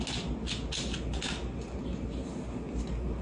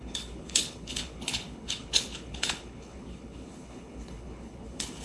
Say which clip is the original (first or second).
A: first